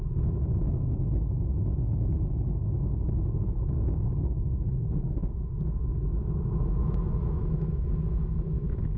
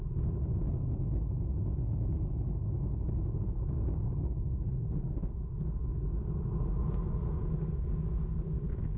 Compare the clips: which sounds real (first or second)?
second